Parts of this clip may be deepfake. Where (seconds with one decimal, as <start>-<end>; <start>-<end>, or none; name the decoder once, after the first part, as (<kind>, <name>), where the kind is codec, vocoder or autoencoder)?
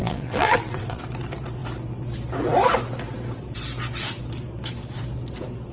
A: 0.0-1.0 (vocoder, WaveNeXt)